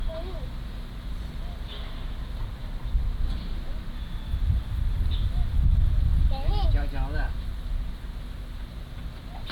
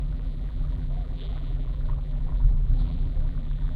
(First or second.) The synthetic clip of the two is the second